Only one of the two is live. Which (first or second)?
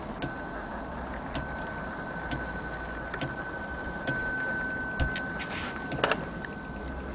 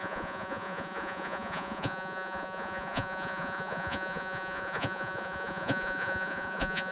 first